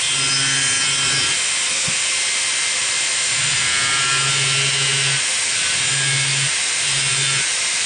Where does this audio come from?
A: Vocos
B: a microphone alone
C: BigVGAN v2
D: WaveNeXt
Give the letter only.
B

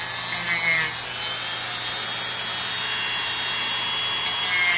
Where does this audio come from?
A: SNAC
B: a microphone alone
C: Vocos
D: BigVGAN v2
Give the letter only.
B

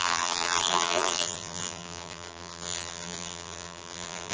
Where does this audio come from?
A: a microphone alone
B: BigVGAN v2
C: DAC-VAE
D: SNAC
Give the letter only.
B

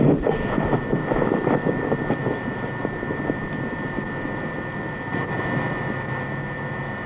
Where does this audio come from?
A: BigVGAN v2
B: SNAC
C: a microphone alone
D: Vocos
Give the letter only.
C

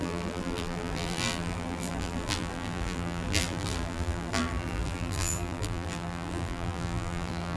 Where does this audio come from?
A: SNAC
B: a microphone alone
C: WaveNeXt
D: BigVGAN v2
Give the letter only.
D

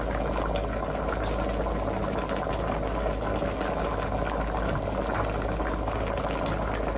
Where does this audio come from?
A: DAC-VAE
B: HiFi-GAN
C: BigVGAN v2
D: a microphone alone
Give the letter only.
D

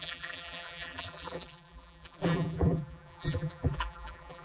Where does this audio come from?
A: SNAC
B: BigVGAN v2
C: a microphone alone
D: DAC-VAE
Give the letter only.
B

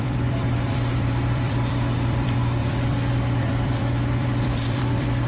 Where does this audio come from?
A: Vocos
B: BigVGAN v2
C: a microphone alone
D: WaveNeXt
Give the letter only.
B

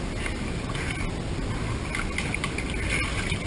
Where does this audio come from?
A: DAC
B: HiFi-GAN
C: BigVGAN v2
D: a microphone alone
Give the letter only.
D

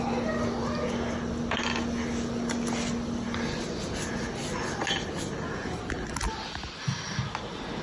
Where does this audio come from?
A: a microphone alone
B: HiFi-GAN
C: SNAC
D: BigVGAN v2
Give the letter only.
A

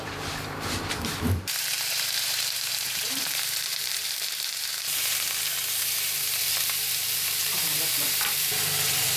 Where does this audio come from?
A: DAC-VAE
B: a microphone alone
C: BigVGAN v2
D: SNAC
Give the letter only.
C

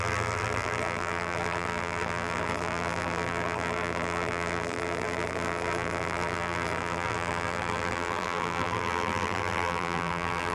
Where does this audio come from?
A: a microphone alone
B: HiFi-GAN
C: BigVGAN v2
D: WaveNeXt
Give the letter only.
C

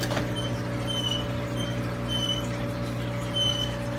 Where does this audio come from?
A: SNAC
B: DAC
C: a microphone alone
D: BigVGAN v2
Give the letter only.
C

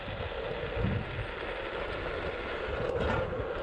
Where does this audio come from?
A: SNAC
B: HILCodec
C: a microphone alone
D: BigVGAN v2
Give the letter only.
C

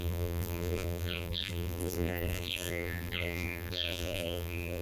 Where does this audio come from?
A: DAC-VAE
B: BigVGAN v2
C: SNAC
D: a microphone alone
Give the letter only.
B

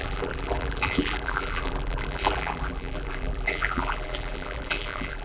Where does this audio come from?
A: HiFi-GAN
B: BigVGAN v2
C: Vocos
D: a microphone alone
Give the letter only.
B